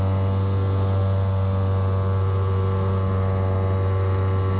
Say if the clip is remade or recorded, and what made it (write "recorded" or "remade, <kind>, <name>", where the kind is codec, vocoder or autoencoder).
recorded